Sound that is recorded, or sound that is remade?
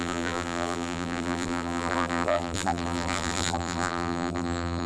remade